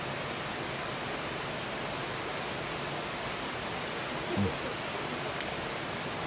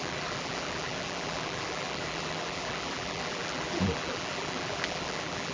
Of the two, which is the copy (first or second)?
second